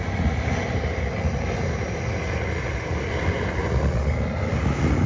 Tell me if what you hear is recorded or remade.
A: recorded